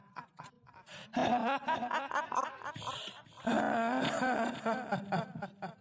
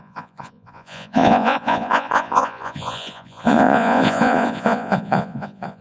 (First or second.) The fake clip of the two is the second